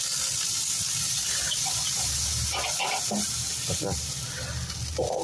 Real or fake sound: real